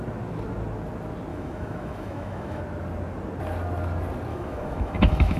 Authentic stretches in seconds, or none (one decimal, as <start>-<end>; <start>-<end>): 0.0-1.3; 2.6-4.3